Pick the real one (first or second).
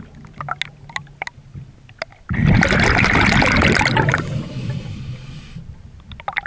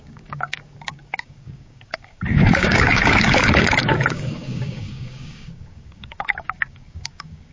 first